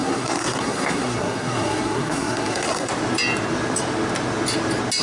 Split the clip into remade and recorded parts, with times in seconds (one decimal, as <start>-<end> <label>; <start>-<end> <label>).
0.0-2.9 remade; 2.9-5.0 recorded